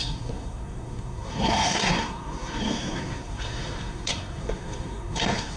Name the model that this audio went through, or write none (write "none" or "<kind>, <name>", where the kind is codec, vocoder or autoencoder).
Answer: codec, SNAC